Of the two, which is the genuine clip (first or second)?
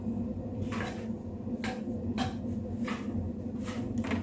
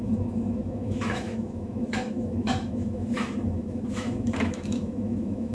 first